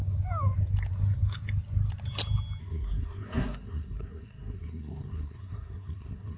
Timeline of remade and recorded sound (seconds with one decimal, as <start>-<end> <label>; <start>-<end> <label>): 0.0-2.6 recorded; 2.6-6.4 remade